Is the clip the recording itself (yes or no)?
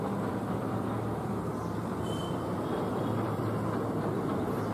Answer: no